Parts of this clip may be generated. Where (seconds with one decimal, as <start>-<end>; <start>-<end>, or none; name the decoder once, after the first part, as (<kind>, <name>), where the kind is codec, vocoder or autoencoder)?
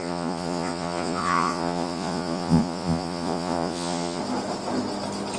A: 0.0-4.2 (vocoder, Vocos)